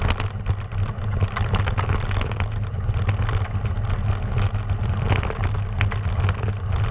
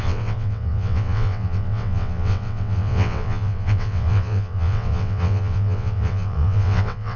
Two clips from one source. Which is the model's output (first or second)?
second